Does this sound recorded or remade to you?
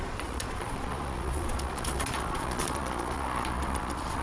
remade